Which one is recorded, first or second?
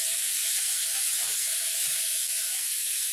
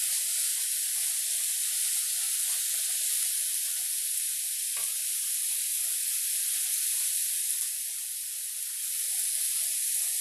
second